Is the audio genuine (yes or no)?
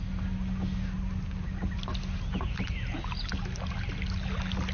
yes